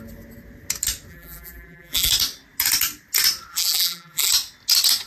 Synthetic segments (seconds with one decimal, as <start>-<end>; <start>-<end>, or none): 1.1-2.1; 3.5-4.3